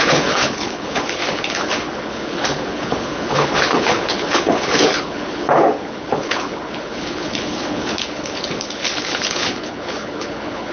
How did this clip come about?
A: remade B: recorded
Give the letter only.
A